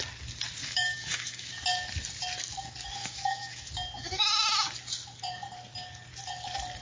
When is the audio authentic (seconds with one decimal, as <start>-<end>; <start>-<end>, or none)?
0.0-0.6; 1.5-3.0; 3.7-6.8